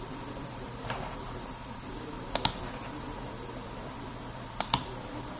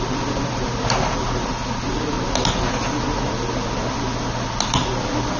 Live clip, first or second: second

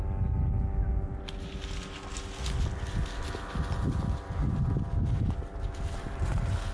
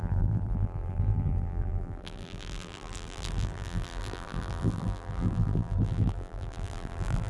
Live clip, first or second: first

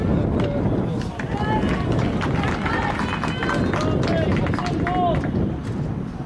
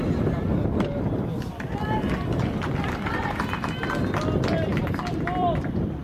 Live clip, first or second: first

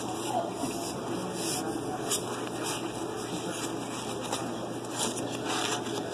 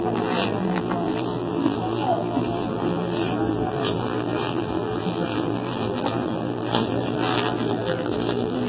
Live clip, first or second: first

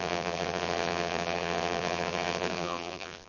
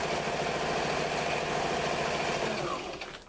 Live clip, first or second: second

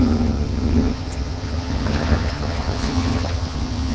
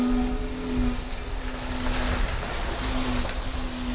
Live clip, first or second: second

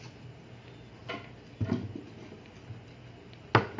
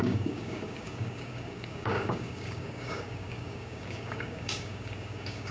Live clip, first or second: first